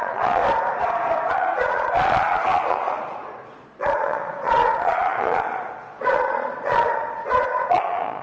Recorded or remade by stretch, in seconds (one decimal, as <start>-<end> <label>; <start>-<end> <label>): 0.0-0.4 remade; 0.4-1.3 recorded; 1.3-8.2 remade